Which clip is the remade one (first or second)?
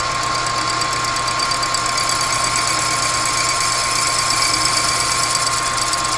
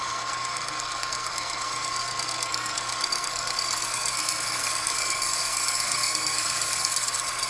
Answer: second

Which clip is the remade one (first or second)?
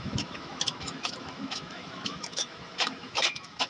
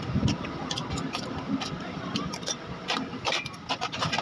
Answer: first